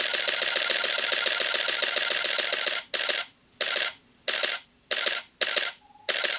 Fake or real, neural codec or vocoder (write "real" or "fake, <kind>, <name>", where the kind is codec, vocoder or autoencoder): real